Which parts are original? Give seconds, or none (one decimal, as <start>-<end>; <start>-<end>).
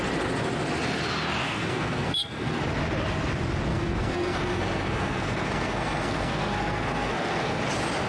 0.0-1.4; 2.6-3.7; 7.6-8.1